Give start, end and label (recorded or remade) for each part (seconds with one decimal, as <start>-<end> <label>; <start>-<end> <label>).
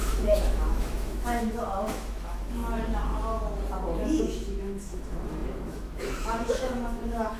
0.0-2.6 remade; 2.6-4.2 recorded; 4.2-7.4 remade